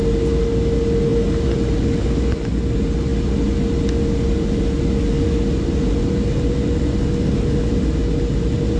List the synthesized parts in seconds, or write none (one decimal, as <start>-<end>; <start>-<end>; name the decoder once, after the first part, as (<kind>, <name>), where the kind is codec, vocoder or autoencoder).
none